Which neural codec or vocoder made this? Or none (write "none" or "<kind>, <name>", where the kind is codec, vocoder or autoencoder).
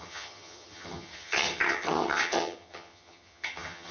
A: vocoder, HiFi-GAN